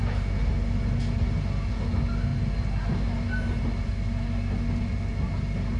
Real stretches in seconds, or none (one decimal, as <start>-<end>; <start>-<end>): 0.0-5.8